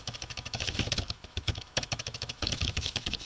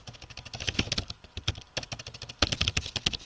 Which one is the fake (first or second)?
first